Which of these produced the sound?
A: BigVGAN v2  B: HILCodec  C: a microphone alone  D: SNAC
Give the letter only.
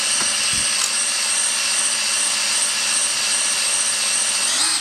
C